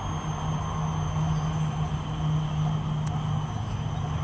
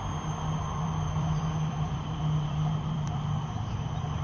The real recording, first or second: first